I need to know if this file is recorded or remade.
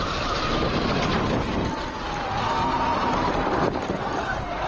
recorded